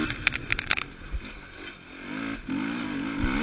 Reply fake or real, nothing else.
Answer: real